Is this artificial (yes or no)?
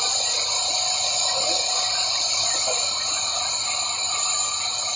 no